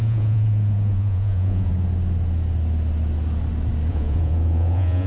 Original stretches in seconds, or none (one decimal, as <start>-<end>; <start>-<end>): 1.7-3.9